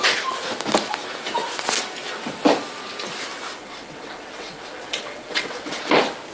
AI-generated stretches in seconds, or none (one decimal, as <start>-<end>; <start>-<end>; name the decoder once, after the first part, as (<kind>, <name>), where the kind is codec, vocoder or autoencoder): 3.6-5.8 (vocoder, WaveNeXt)